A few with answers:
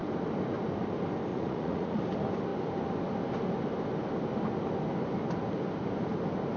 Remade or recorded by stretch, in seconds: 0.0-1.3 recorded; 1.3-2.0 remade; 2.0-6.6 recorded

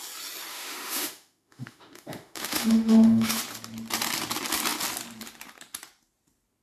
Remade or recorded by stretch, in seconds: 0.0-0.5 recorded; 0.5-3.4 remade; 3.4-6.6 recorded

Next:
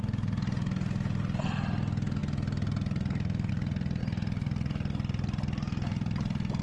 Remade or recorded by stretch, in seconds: 0.0-6.6 recorded